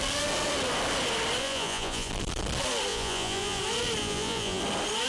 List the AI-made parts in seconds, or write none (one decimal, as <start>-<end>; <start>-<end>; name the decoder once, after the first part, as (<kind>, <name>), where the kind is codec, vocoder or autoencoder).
1.4-2.1 (vocoder, Vocos); 2.9-3.6; 4.0-4.6